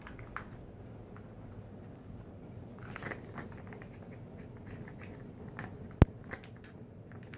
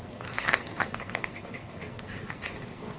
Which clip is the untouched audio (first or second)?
first